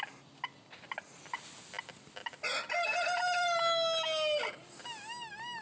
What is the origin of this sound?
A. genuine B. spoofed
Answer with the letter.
A